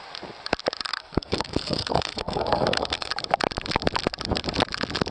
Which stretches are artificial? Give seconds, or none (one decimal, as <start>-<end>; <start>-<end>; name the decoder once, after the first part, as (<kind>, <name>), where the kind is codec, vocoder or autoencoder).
0.9-3.1 (codec, SNAC)

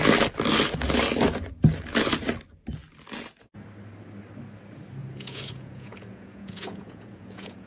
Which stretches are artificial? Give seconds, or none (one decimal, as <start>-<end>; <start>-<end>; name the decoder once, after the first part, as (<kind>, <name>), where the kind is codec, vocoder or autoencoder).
5.0-7.7 (vocoder, Vocos)

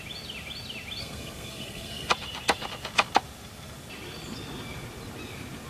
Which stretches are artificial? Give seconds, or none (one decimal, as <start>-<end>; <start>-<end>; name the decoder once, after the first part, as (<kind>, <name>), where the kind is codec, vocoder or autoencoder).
1.0-2.1 (codec, SNAC)

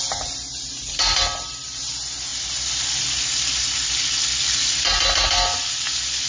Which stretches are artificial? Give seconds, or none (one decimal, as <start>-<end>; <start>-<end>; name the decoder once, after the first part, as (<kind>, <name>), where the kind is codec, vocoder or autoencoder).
none

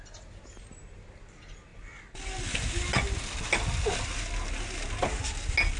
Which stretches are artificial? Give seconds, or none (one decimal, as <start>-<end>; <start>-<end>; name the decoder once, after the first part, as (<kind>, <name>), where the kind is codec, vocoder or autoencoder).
none